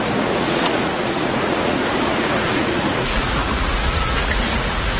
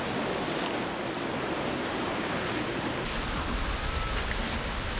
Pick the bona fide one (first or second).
second